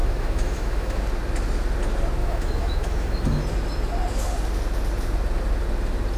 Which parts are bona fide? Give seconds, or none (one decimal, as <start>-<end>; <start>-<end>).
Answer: 1.0-2.2; 3.4-6.2